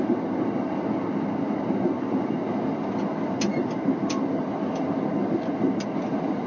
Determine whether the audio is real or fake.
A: real